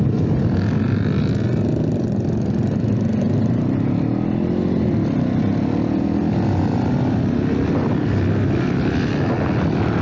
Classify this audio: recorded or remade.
recorded